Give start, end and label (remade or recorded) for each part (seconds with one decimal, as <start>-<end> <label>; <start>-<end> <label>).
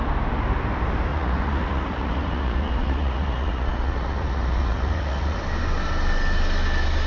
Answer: 0.0-1.1 recorded; 1.1-5.4 remade; 5.4-7.1 recorded